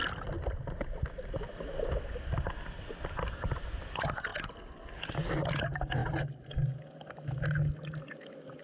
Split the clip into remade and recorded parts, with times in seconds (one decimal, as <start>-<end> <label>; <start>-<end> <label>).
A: 0.0-8.6 recorded